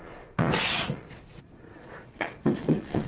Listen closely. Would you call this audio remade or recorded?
remade